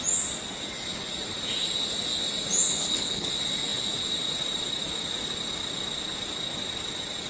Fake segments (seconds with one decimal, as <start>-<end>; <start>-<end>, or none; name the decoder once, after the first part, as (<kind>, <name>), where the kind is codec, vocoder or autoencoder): 2.8-3.3 (codec, HILCodec)